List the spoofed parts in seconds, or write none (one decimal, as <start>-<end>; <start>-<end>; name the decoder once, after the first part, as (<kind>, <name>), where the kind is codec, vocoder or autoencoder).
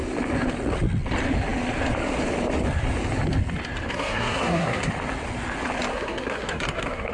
3.9-4.9 (codec, SNAC); 5.9-7.1